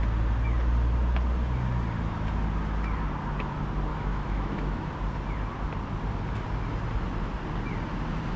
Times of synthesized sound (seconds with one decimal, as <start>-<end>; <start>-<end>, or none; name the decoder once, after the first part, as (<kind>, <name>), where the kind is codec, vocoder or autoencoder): 3.9-4.9 (autoencoder, DAC-VAE)